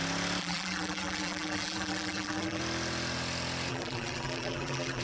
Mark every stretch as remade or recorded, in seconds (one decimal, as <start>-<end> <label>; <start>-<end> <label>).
0.0-0.4 recorded; 0.4-2.6 remade; 2.6-3.7 recorded; 3.7-5.0 remade